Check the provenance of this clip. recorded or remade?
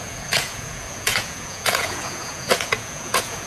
remade